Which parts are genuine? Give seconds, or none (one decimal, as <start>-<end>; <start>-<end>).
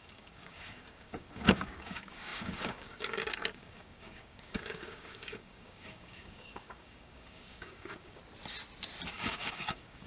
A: 8.2-9.1